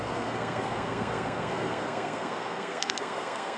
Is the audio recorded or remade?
remade